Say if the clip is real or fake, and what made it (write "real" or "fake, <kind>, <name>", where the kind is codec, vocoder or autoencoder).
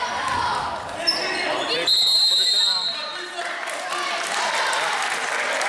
real